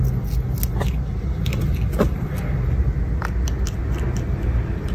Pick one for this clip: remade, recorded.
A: recorded